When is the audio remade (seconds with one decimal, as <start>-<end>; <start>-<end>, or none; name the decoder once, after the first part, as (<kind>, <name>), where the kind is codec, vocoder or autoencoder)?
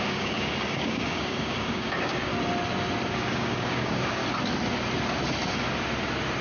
0.0-2.3 (codec, DAC); 3.1-4.2